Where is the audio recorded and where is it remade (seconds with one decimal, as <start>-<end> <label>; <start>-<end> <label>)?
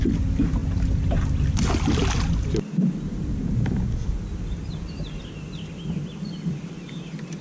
0.0-7.4 recorded